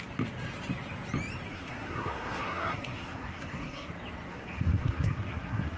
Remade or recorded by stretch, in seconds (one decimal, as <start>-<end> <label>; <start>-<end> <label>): 0.0-1.5 recorded; 1.5-3.9 remade; 3.9-4.3 recorded; 4.3-5.8 remade